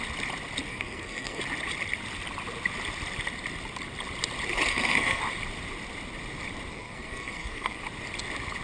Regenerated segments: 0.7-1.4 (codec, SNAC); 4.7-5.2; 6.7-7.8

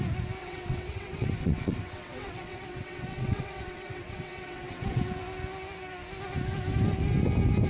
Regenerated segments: 0.4-5.0 (vocoder, WaveNeXt)